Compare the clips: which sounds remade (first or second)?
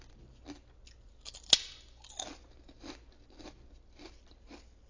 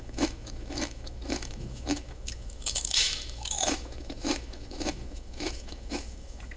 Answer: second